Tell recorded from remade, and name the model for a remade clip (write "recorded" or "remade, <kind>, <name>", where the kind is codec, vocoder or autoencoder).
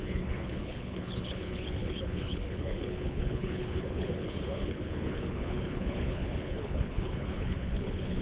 remade, codec, HILCodec